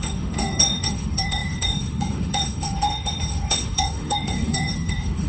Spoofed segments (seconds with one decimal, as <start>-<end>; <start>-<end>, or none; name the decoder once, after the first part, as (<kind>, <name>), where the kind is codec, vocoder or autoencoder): 0.0-5.3 (autoencoder, DAC-VAE)